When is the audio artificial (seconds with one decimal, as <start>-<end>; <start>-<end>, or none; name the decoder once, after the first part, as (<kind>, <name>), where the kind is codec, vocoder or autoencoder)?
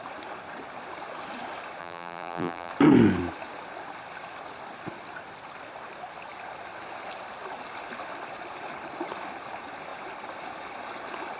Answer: 1.8-2.7 (vocoder, BigVGAN v2)